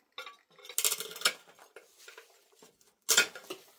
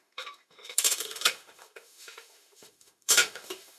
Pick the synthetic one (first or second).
second